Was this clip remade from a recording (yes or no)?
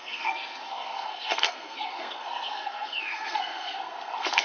yes